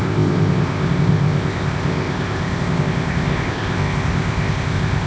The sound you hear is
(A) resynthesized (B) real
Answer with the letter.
A